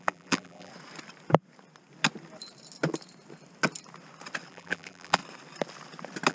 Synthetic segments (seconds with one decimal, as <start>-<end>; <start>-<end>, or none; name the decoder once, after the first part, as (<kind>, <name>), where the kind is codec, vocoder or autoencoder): 0.0-0.7 (vocoder, BigVGAN v2); 4.5-5.2